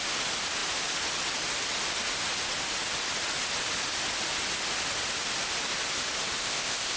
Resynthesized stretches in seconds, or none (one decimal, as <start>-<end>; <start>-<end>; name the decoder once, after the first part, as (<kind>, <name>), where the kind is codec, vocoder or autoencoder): 6.4-7.0 (codec, ZipCodec)